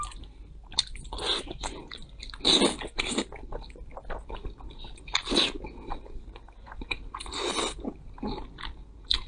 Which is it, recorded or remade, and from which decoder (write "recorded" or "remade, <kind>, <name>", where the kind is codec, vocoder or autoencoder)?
recorded